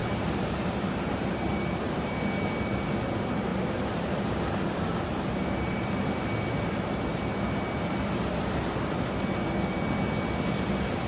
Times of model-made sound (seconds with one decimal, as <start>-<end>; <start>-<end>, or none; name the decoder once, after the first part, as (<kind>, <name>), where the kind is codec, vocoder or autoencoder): 0.0-2.1 (vocoder, BigVGAN v2); 3.5-6.3